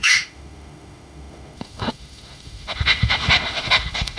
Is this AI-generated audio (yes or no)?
yes